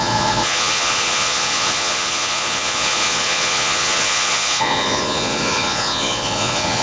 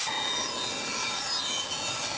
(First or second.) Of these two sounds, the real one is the second